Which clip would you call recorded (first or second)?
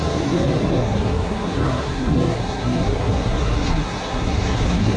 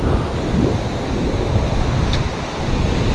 second